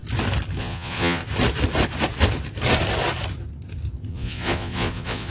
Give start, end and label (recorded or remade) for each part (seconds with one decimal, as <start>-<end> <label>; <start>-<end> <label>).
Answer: 0.0-0.6 recorded; 0.6-1.2 remade; 1.2-4.1 recorded; 4.1-5.3 remade